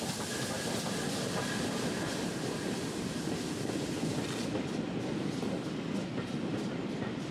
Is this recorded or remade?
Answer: recorded